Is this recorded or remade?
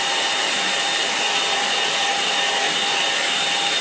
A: recorded